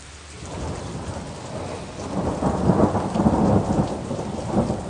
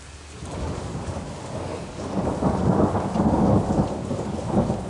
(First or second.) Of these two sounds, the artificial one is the second